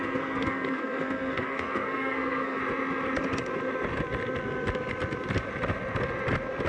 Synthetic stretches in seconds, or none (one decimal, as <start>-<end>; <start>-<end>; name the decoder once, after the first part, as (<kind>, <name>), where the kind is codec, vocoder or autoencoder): 0.0-2.6 (codec, SNAC)